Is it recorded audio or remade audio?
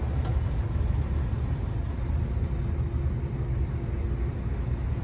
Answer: recorded